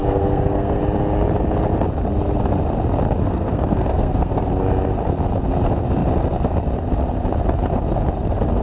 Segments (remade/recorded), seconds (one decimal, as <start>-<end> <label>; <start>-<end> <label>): 0.0-0.8 remade; 0.8-3.2 recorded; 3.2-4.5 remade; 4.5-8.6 recorded